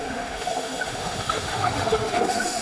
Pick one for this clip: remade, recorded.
remade